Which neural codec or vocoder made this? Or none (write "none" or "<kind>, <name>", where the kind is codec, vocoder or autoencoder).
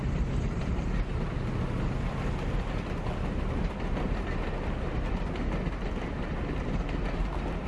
none